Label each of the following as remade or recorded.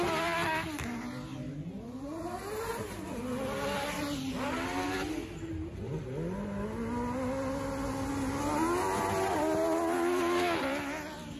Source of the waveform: recorded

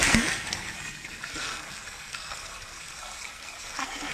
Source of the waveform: remade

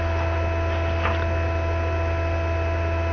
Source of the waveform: recorded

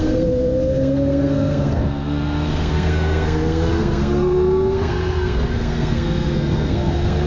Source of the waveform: remade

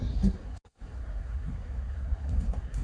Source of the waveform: remade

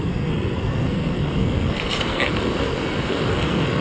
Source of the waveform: remade